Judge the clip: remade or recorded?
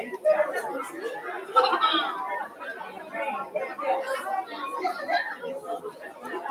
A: recorded